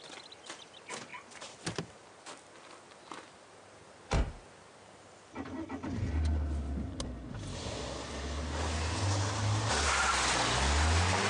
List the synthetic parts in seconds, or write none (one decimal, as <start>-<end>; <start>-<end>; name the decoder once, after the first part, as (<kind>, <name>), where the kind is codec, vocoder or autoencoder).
1.1-2.4 (vocoder, BigVGAN v2)